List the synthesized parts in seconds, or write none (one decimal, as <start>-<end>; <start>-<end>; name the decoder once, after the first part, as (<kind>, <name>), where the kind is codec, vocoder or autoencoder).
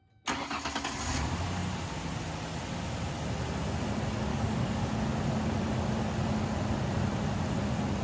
4.3-4.9 (codec, DAC)